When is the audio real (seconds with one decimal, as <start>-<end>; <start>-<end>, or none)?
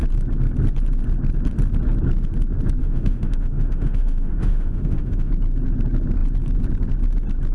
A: 0.0-2.8; 5.3-7.5